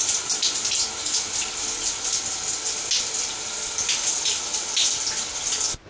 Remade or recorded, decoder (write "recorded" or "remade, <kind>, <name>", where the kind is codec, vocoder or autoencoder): recorded